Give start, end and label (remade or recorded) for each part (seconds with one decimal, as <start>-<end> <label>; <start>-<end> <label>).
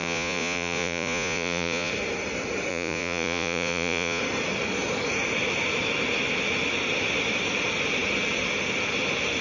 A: 0.0-1.9 remade; 1.9-2.7 recorded; 2.7-4.2 remade; 4.2-9.4 recorded